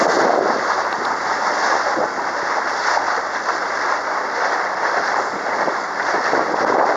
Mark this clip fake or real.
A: real